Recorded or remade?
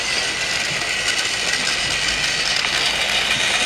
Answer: recorded